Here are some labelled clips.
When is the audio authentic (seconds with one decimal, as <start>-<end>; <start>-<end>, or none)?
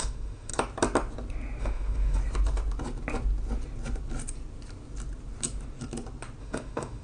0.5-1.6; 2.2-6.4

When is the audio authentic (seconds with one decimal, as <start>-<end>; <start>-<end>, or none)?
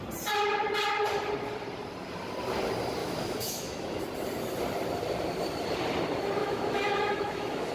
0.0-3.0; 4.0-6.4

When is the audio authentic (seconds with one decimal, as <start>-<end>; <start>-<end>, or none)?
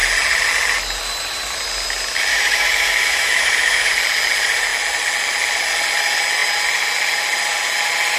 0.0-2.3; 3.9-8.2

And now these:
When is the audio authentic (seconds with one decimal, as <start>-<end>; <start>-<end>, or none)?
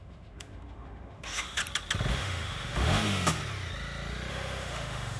1.6-2.1; 3.4-4.3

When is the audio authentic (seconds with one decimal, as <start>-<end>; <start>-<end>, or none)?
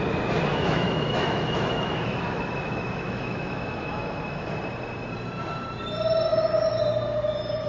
0.0-0.5; 4.5-7.7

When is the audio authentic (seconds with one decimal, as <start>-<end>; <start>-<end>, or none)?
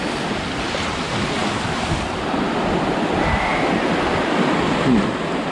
0.0-5.5